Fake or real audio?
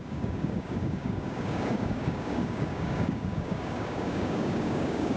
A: fake